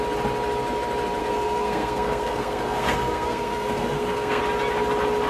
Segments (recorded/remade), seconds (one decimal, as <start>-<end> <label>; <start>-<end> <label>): 0.0-1.2 recorded; 1.2-4.4 remade; 4.4-5.3 recorded